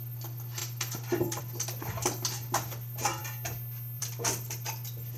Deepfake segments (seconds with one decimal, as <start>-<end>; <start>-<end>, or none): 0.0-3.2; 4.0-5.2